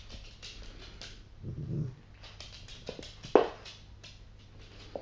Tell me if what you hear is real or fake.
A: real